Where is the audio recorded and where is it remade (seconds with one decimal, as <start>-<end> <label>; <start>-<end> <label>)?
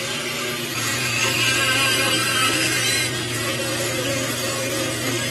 0.0-0.7 recorded; 0.7-1.2 remade; 1.2-2.3 recorded; 2.3-3.6 remade; 3.6-5.3 recorded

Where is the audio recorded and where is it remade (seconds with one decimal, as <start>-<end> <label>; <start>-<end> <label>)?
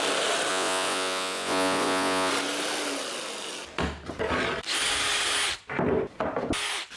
0.0-0.5 recorded; 0.5-2.3 remade; 2.3-7.0 recorded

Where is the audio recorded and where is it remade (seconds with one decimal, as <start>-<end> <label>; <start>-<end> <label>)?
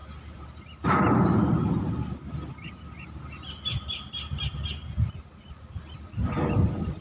0.0-1.9 remade; 1.9-7.0 recorded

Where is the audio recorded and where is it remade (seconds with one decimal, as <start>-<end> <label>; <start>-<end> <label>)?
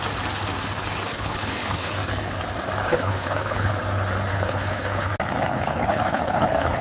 0.0-1.1 recorded; 1.1-1.9 remade; 1.9-2.9 recorded; 2.9-3.7 remade; 3.7-4.3 recorded; 4.3-5.1 remade; 5.1-5.5 recorded; 5.5-6.8 remade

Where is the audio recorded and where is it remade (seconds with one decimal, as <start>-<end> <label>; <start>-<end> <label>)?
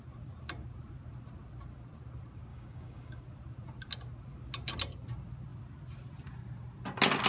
0.0-2.5 recorded; 2.5-3.2 remade; 3.2-7.3 recorded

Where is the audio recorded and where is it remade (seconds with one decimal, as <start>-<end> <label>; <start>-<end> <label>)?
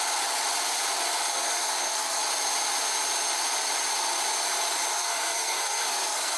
0.0-1.3 recorded; 1.3-2.2 remade; 2.2-4.9 recorded; 4.9-6.4 remade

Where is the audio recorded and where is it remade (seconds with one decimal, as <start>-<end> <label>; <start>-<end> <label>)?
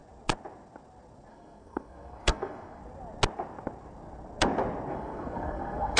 0.0-1.3 recorded; 1.3-2.8 remade; 2.8-4.9 recorded; 4.9-6.0 remade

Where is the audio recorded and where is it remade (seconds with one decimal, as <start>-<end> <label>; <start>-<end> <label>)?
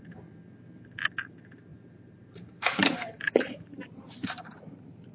0.0-1.7 recorded; 1.7-5.1 remade